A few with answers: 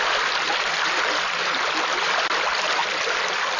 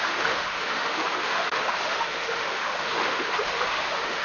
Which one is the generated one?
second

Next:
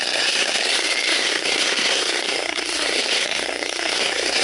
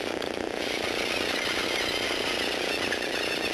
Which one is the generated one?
first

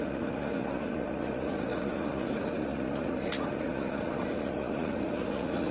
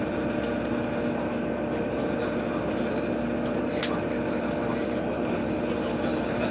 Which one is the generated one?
first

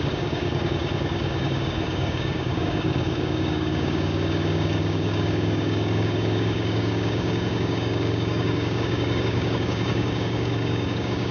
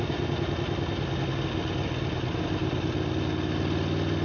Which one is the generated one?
first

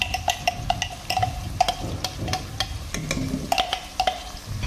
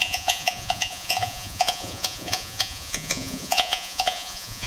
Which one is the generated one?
second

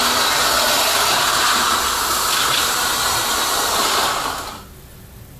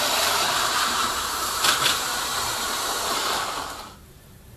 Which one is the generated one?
second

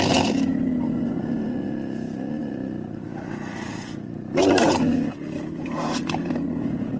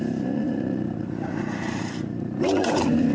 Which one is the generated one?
second